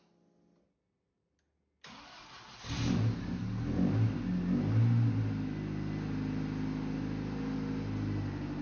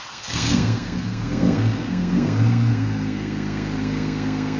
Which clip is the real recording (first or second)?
first